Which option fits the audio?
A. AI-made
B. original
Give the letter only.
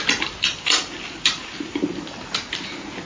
B